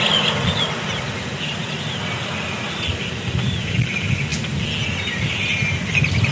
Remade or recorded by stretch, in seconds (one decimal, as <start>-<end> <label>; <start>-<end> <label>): 0.0-1.6 recorded; 1.6-2.2 remade; 2.2-6.3 recorded